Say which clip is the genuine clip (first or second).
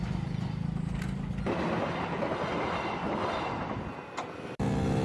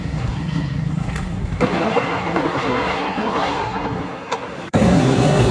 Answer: first